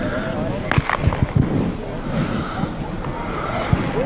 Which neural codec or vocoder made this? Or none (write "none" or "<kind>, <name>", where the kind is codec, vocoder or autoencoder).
none